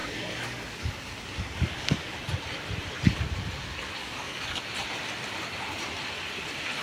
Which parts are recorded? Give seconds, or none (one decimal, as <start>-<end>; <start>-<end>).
2.2-4.0; 4.6-6.8